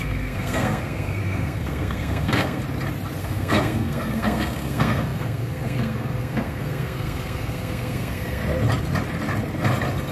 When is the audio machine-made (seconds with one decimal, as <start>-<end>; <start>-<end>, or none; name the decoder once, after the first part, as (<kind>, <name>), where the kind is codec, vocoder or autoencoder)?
0.0-2.6 (codec, SNAC); 3.2-8.4